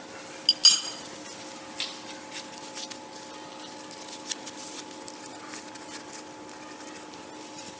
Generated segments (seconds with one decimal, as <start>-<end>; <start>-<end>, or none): none